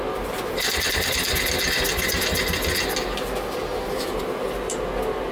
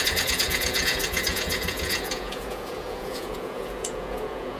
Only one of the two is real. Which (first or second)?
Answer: first